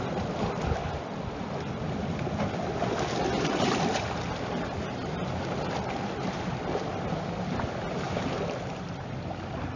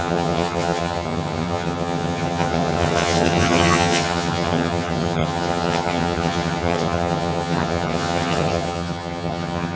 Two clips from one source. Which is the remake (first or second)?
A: second